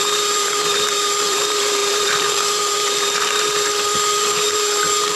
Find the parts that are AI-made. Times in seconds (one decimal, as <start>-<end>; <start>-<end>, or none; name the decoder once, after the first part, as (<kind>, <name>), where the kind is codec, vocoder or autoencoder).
0.0-5.2 (vocoder, BigVGAN v2)